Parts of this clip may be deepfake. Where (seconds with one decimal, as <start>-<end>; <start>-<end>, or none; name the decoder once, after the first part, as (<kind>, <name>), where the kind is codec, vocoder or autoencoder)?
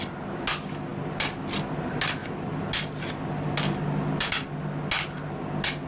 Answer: none